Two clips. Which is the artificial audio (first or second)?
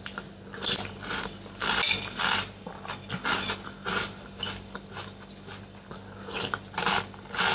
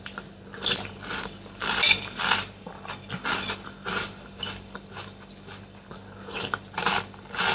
second